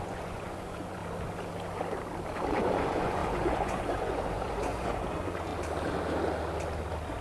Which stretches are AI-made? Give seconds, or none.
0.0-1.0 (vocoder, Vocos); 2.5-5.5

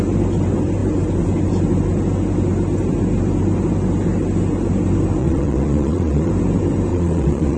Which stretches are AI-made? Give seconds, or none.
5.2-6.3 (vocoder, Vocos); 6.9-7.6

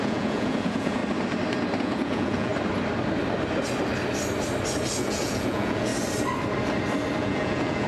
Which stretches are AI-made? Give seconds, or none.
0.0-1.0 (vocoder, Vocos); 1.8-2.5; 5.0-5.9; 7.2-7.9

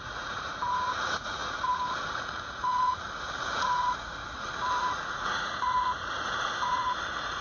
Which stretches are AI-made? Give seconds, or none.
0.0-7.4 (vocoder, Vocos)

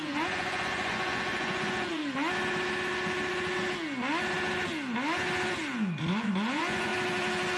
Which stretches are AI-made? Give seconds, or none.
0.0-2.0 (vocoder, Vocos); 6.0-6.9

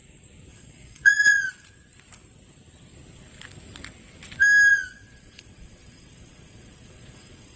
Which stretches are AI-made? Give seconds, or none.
0.5-1.5 (vocoder, Vocos); 4.7-7.6

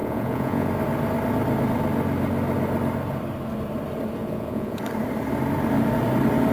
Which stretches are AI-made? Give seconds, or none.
0.0-0.7 (vocoder, Vocos); 4.2-4.8

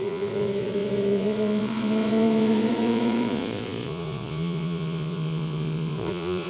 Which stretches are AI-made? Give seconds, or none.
0.0-6.5 (vocoder, Vocos)